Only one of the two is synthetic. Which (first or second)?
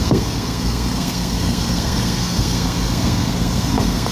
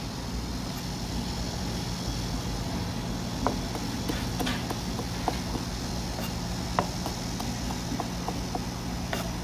first